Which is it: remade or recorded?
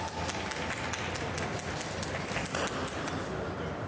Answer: recorded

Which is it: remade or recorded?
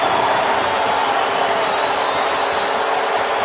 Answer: recorded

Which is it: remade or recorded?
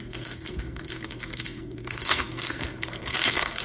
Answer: remade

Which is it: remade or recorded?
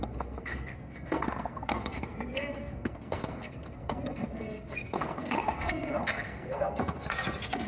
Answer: remade